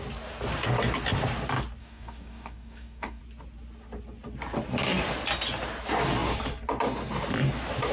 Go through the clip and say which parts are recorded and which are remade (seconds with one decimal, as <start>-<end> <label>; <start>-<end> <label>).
0.0-1.8 recorded; 1.8-3.2 remade; 3.2-7.9 recorded